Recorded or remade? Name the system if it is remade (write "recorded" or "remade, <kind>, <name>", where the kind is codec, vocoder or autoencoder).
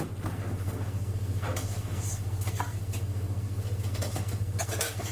remade, codec, SNAC